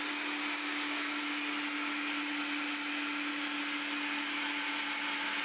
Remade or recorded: recorded